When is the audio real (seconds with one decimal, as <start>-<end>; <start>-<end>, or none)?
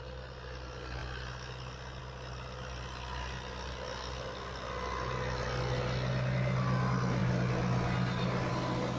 0.0-9.0